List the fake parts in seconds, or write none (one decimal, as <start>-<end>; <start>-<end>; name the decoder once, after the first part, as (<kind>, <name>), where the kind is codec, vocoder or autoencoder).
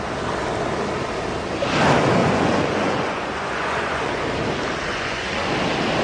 2.2-4.2 (vocoder, Vocos); 4.9-5.5